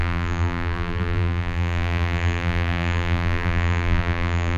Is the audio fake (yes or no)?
yes